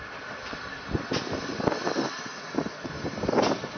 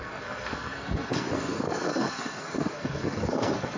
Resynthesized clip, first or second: second